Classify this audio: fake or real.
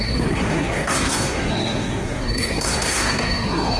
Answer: fake